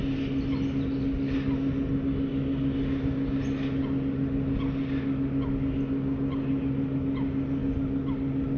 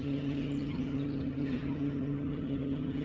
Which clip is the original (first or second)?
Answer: first